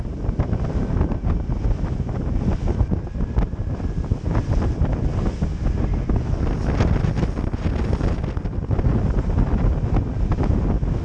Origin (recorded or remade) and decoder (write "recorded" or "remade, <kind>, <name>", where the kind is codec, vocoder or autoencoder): recorded